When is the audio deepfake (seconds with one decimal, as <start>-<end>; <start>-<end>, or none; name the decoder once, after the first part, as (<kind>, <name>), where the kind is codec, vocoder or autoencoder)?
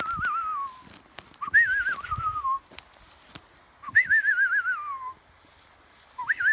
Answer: none